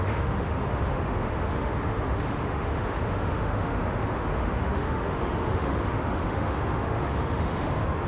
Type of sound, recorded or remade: remade